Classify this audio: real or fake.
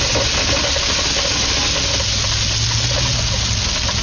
real